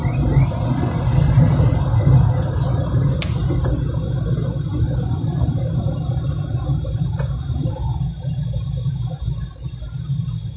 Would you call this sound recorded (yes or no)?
yes